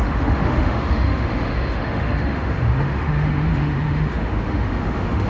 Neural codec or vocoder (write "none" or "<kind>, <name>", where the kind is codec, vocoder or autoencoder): autoencoder, DAC-VAE